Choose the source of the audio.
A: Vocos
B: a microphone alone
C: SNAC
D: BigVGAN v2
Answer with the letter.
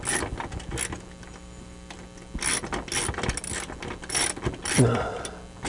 B